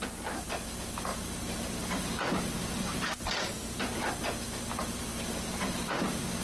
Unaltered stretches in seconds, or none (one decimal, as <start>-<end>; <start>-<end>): 0.0-1.1; 4.1-4.8; 5.9-6.4